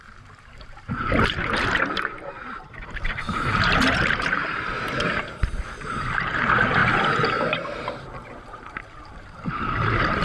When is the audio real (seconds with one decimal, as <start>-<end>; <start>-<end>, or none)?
none